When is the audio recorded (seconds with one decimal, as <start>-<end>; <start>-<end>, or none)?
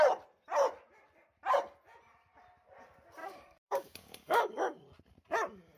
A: 0.0-3.2; 4.8-5.8